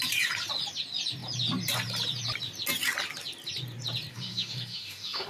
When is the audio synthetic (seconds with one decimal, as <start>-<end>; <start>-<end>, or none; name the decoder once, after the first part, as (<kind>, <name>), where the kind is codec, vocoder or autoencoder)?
4.1-5.3 (autoencoder, DAC-VAE)